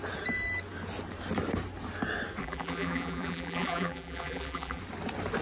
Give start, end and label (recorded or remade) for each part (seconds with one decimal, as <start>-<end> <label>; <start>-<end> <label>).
0.0-2.4 recorded; 2.4-4.8 remade; 4.8-5.4 recorded